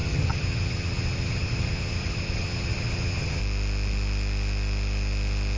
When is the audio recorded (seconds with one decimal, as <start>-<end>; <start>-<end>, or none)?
3.4-5.6